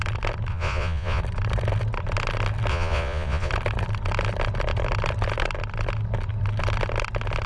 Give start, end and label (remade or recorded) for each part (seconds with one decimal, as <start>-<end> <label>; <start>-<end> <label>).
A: 0.0-0.5 recorded; 0.5-1.2 remade; 1.2-2.7 recorded; 2.7-3.5 remade; 3.5-7.5 recorded